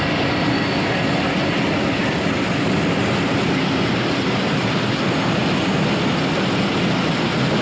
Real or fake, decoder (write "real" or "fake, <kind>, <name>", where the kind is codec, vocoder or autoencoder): real